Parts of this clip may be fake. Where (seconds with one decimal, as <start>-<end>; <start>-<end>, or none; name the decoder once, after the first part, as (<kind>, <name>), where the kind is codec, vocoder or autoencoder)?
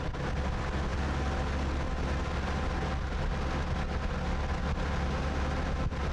none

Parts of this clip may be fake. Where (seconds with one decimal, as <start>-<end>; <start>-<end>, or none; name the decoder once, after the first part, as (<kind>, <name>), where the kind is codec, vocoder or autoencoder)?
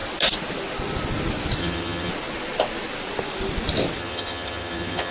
1.6-2.1 (vocoder, HiFi-GAN); 4.0-5.1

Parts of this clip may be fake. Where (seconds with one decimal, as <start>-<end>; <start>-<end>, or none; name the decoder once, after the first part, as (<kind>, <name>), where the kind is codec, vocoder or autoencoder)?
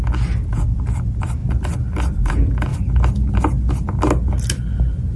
none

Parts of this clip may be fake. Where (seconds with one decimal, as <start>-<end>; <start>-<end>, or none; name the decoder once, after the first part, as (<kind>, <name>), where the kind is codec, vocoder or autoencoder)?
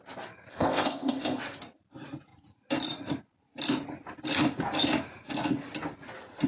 0.5-1.4 (codec, ZipCodec)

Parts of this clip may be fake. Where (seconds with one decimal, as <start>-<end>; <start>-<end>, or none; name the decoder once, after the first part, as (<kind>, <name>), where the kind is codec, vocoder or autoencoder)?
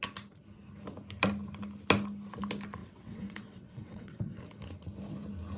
2.8-4.4 (vocoder, WaveNeXt)